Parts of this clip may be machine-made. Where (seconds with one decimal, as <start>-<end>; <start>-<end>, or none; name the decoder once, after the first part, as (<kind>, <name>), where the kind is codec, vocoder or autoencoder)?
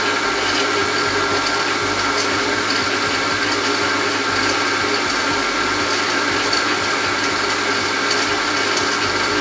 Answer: none